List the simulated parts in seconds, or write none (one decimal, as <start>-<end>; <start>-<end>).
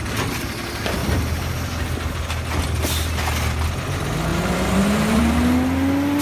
4.3-5.2